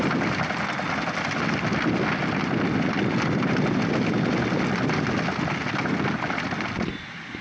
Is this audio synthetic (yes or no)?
no